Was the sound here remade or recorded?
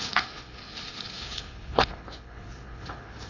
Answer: remade